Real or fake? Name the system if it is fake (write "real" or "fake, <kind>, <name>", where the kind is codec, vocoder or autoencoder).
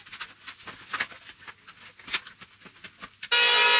real